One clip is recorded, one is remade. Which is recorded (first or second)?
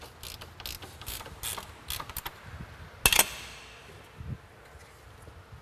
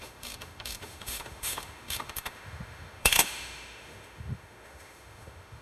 first